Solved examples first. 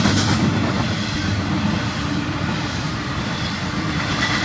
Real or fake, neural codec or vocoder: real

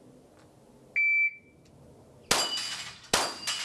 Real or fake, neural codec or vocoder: real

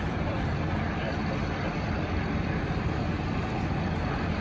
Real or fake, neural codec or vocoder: fake, vocoder, BigVGAN v2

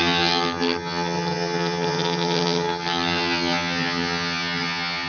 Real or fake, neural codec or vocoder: fake, vocoder, HiFi-GAN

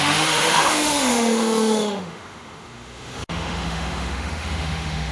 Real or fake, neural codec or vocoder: fake, autoencoder, DAC-VAE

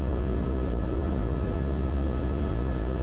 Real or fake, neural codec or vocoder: fake, vocoder, Vocos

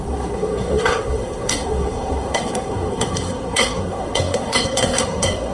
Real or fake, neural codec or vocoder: fake, codec, SNAC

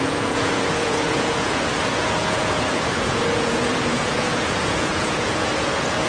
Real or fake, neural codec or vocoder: fake, vocoder, Vocos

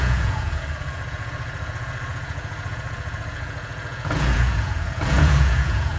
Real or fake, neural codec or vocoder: fake, vocoder, Vocos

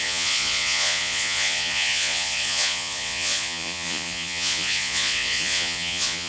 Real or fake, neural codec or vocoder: fake, vocoder, Vocos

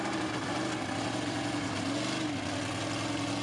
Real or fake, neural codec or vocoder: real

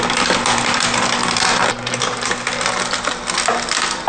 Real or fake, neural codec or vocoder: real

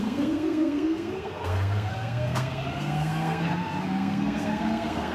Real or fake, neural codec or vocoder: fake, codec, SNAC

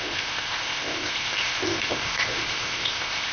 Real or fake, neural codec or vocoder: fake, codec, ZipCodec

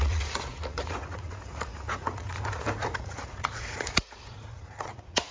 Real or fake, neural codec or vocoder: fake, vocoder, Vocos